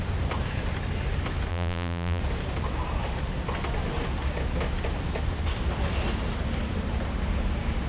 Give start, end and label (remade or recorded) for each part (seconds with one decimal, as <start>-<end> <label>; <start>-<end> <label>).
0.0-1.5 recorded; 1.5-2.2 remade; 2.2-7.9 recorded